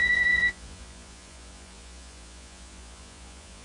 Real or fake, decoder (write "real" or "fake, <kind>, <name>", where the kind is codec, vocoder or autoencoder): fake, vocoder, Vocos